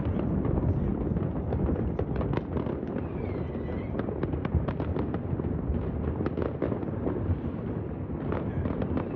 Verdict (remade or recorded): recorded